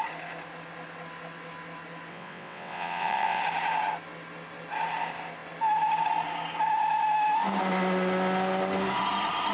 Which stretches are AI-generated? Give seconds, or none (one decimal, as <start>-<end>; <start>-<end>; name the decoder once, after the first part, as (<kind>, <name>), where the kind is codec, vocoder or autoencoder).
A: 2.1-3.4 (vocoder, WaveNeXt)